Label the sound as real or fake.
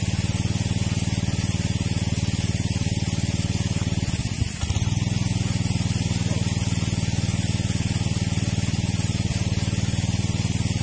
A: real